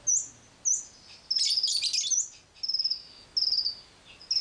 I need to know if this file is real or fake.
real